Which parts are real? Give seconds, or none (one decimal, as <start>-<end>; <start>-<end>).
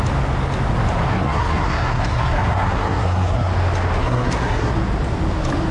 0.0-1.1; 3.5-4.0; 4.7-5.7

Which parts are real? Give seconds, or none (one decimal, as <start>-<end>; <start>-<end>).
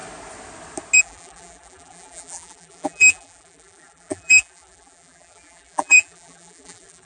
0.0-1.0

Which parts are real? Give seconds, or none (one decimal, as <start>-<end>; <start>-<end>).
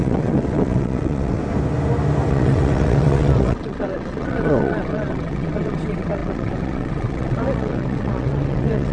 1.4-2.3